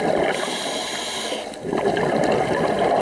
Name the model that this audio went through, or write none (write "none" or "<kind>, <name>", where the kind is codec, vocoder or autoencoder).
none